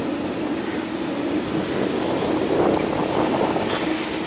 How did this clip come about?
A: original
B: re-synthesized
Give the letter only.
A